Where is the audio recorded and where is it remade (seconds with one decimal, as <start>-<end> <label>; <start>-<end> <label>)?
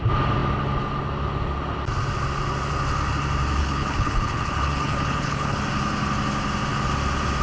0.0-3.6 recorded; 3.6-5.6 remade; 5.6-7.4 recorded